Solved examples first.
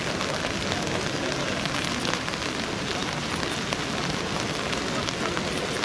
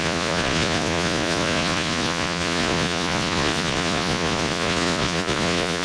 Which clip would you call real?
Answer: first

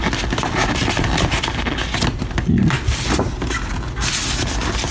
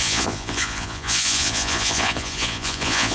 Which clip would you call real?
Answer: first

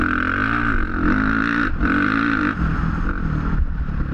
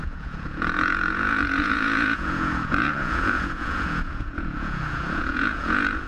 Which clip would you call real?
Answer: first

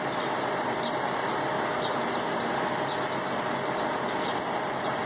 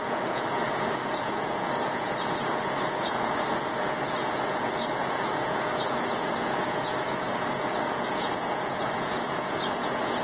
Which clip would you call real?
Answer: first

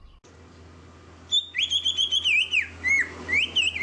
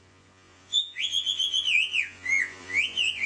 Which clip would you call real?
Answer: first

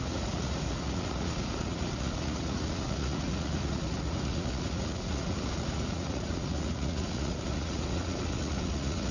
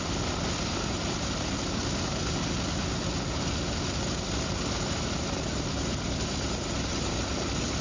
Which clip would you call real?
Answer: second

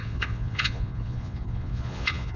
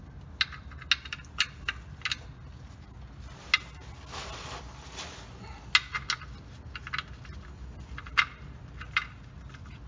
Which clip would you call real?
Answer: second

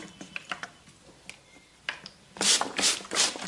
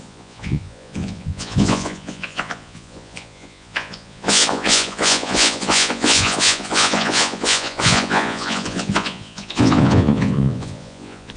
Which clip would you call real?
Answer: first